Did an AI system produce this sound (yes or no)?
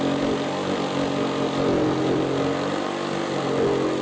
no